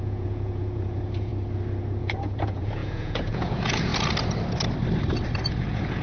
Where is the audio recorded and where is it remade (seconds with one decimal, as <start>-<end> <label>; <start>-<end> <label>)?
0.0-1.3 remade; 1.3-2.0 recorded; 2.0-3.9 remade; 3.9-5.5 recorded; 5.5-6.0 remade